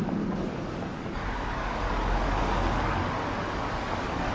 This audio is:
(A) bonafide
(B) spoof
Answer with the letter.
B